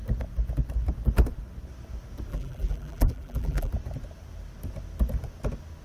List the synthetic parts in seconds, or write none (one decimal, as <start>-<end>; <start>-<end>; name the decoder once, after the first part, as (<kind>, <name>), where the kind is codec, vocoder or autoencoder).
2.3-3.7 (vocoder, BigVGAN v2)